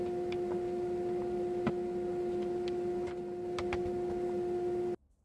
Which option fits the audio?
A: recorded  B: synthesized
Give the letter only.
A